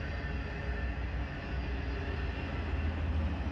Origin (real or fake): real